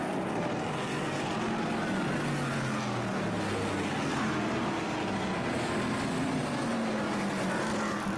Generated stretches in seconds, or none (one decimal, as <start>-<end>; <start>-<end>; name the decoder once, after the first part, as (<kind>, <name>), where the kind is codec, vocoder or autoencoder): none